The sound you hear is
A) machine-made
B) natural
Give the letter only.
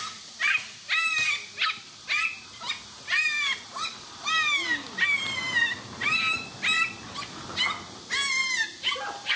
B